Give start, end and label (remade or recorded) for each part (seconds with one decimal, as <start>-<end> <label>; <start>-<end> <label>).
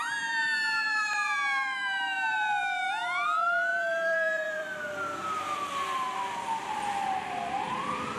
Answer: 0.0-8.2 remade